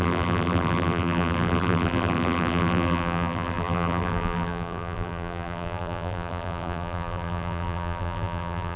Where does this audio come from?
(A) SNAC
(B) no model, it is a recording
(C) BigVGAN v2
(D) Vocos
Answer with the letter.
C